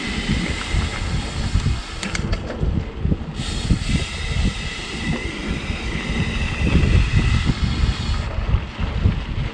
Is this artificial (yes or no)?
no